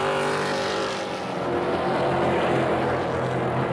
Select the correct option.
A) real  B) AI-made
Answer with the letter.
A